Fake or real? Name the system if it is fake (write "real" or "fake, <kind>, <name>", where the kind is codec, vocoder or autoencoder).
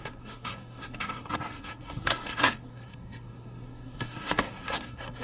fake, codec, SNAC